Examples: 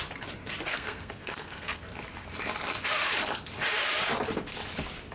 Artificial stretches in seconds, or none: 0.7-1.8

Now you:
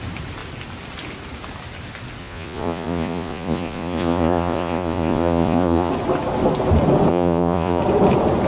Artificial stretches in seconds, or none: 2.2-5.9; 7.1-7.8

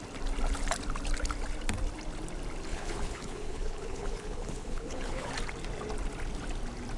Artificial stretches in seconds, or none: 2.7-5.3

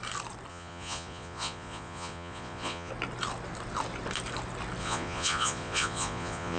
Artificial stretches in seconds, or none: 0.5-2.9; 4.8-6.6